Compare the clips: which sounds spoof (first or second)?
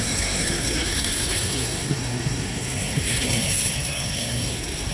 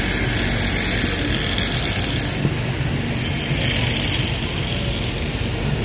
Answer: first